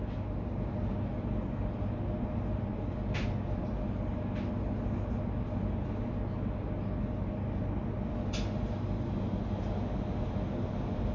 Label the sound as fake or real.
real